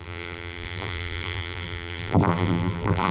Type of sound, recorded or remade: remade